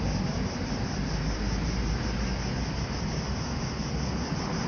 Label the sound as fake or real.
real